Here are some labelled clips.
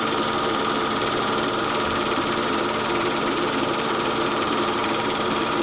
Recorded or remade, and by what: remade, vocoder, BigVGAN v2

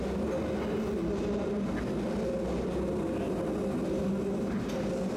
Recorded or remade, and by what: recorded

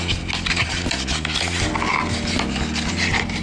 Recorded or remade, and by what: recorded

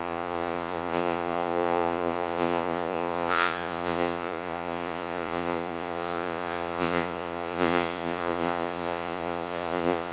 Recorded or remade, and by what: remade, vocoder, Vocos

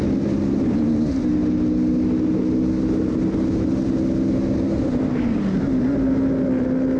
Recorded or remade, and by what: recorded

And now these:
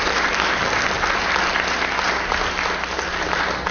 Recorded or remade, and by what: recorded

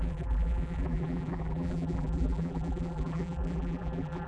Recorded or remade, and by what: remade, vocoder, BigVGAN v2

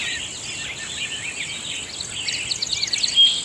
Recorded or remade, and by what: recorded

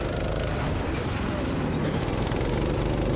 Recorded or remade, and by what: remade, vocoder, BigVGAN v2